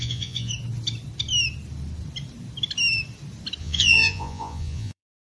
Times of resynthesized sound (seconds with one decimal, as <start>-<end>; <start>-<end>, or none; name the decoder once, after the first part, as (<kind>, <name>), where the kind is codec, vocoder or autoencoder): 0.0-0.5 (vocoder, Vocos); 3.6-5.2